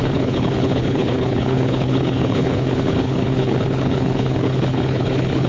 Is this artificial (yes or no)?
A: yes